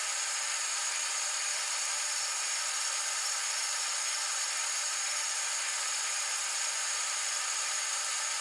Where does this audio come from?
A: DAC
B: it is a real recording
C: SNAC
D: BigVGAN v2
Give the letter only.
D